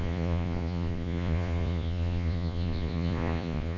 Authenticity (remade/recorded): remade